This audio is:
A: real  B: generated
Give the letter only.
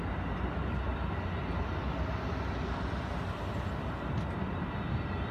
A